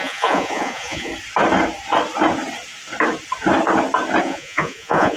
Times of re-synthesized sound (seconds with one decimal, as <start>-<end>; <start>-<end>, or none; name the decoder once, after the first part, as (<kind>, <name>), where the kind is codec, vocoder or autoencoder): 0.0-1.1 (vocoder, Vocos); 4.2-5.2